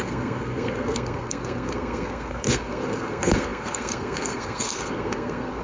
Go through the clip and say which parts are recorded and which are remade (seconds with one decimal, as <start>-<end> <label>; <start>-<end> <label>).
0.0-5.6 remade